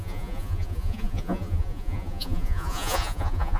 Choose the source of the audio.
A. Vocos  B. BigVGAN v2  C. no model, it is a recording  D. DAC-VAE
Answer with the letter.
A